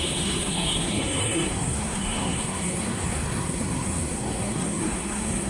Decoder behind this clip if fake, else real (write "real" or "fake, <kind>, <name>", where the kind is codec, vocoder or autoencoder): fake, codec, SNAC